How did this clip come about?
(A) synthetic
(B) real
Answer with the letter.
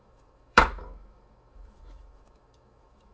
A